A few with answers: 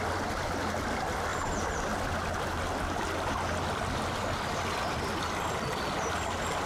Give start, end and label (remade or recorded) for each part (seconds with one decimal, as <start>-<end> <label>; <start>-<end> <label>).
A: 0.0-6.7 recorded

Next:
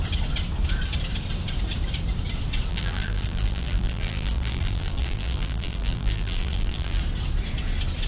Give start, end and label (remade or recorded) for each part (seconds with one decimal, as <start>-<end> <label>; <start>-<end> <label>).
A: 0.0-2.7 recorded; 2.7-7.0 remade; 7.0-8.1 recorded

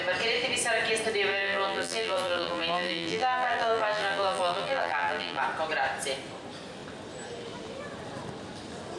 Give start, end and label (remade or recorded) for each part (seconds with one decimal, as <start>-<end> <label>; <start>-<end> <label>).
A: 0.0-1.3 recorded; 1.3-5.4 remade; 5.4-9.0 recorded

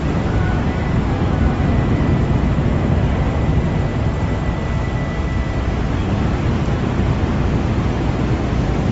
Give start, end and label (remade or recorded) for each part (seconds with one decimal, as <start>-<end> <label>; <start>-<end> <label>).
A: 0.0-6.0 recorded; 6.0-8.5 remade; 8.5-8.9 recorded

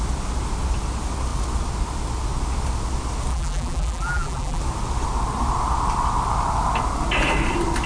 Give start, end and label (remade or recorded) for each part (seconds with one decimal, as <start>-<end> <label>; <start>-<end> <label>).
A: 0.0-3.3 recorded; 3.3-4.6 remade; 4.6-7.9 recorded

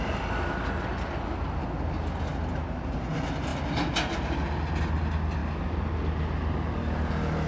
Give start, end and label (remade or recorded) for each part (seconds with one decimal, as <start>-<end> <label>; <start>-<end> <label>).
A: 0.0-7.5 recorded